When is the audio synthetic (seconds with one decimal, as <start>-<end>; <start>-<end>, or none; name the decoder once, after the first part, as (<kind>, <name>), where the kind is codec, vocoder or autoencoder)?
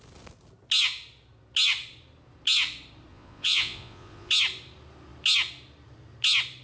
3.1-4.3 (vocoder, Vocos)